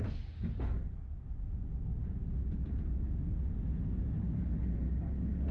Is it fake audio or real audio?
real